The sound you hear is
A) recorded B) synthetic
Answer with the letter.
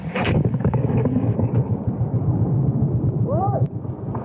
B